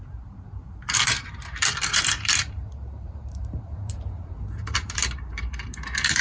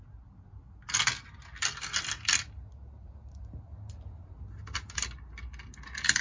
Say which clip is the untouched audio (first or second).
second